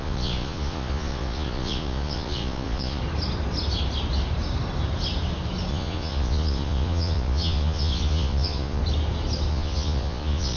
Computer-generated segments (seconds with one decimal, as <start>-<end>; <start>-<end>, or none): 0.0-3.0; 5.7-8.8; 9.5-10.6